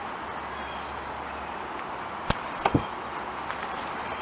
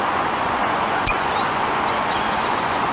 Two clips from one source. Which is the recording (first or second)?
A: first